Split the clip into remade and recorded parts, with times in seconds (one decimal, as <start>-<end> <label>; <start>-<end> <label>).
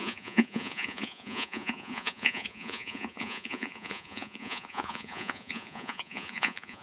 0.0-6.8 remade